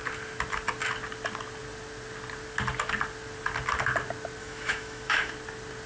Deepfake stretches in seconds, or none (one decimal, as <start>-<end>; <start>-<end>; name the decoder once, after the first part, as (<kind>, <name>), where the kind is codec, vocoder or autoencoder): 4.4-5.3 (autoencoder, DAC-VAE)